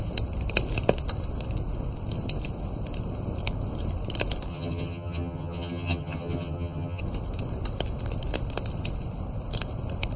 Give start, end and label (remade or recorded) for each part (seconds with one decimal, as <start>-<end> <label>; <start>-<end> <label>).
0.0-4.5 recorded; 4.5-7.0 remade; 7.0-10.2 recorded

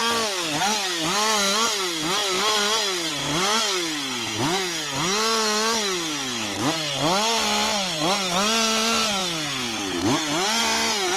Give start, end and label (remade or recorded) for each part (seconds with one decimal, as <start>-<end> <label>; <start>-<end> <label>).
0.0-11.2 recorded